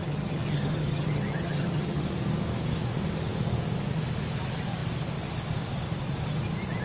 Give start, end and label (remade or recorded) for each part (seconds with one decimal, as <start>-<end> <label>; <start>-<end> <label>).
0.0-2.0 remade; 2.0-6.8 recorded